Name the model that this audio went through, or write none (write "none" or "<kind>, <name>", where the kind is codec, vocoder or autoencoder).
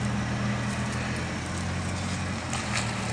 none